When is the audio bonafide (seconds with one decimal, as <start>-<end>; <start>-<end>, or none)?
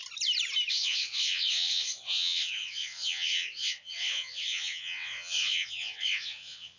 0.0-0.7